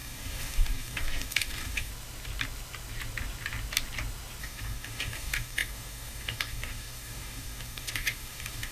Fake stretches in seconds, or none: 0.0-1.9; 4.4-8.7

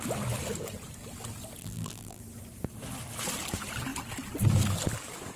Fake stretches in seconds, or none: 1.6-2.2

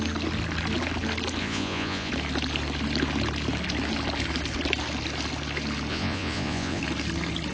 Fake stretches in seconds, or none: 1.4-2.1; 5.9-6.8

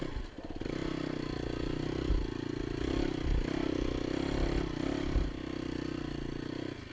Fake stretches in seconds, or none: none